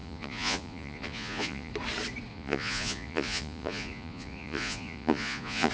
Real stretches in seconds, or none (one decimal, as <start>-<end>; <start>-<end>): 1.7-2.3